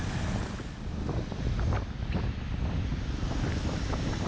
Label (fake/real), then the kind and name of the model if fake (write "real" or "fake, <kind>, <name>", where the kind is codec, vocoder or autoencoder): real